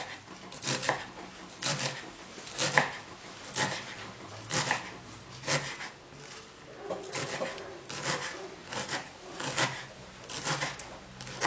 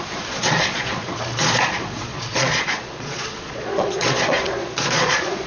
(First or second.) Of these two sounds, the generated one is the second